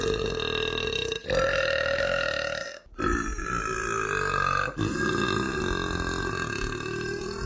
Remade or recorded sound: recorded